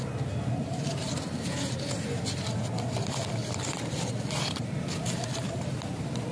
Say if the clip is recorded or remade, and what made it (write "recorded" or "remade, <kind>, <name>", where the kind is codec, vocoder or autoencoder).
recorded